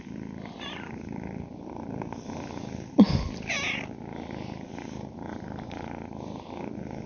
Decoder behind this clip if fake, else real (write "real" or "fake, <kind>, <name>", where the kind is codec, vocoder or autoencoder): real